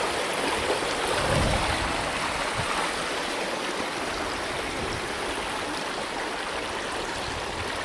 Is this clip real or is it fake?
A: real